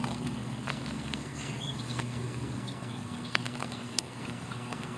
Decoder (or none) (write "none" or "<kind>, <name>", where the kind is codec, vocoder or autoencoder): codec, SNAC